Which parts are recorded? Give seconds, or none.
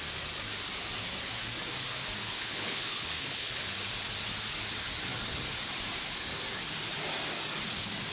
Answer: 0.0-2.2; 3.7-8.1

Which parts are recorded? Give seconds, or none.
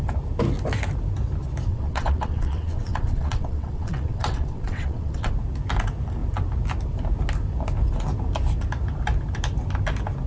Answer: 0.0-1.7; 5.3-10.3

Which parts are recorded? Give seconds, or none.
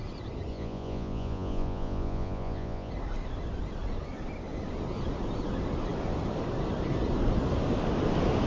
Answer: 0.0-0.5; 2.9-8.5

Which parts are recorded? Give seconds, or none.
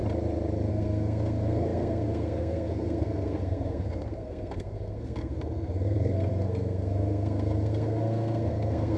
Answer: 0.0-0.7